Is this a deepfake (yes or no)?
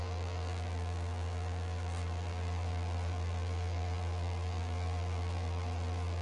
yes